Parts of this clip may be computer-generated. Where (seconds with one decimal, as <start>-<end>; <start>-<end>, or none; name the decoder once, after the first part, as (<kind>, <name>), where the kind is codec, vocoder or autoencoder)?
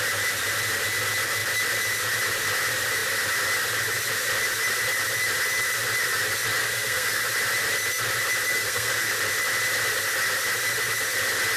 6.6-7.2 (codec, SNAC); 8.5-9.1